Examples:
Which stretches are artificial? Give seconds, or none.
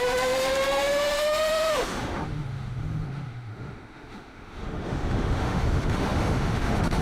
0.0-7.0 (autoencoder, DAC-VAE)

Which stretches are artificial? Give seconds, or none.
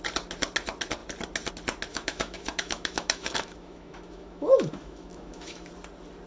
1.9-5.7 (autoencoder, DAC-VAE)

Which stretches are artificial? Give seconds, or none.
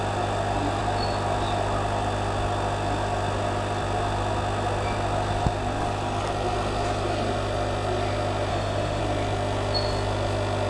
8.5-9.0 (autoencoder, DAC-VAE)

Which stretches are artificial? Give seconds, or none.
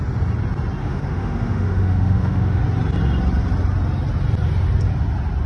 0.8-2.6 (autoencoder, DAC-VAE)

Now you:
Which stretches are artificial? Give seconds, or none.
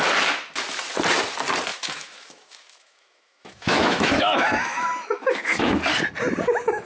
1.7-5.8 (autoencoder, DAC-VAE)